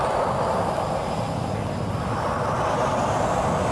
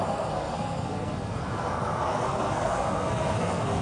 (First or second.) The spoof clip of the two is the second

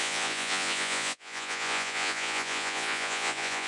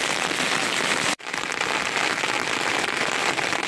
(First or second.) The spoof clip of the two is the first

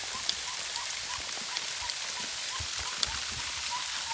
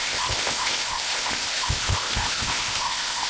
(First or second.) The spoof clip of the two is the second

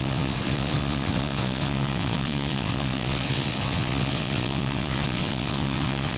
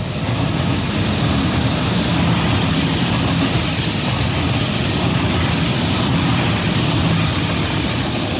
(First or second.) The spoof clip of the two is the first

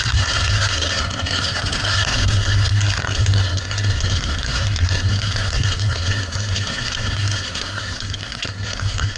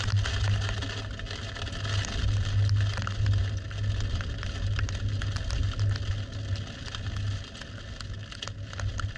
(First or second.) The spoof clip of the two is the first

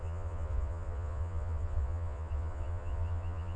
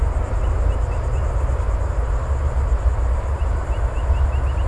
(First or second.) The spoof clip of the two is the first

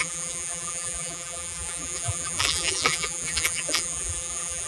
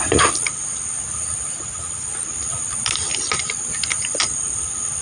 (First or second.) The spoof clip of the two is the first